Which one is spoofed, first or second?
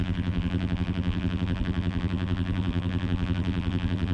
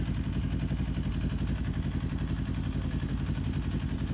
first